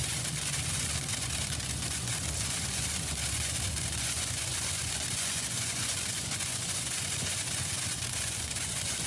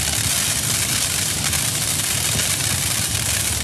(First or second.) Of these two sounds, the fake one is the first